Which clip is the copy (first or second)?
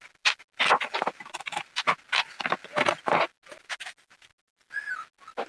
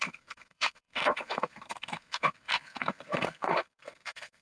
second